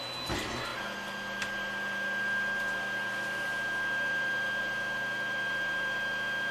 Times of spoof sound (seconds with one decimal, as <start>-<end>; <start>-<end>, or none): none